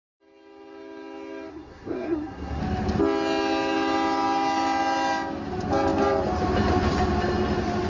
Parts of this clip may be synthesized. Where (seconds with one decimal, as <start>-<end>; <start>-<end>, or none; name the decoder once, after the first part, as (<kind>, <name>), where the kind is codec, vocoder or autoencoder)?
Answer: 1.5-2.6 (codec, SNAC)